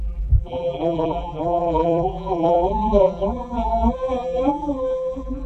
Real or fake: fake